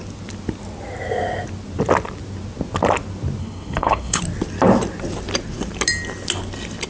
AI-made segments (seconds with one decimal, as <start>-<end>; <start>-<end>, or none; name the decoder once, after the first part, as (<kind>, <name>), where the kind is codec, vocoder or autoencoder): 3.4-4.2 (codec, HILCodec)